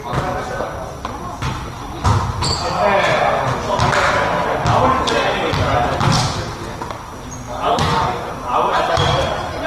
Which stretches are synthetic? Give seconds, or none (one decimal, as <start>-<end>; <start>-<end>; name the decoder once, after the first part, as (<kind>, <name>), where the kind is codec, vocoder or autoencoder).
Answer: 7.7-8.3 (codec, SNAC)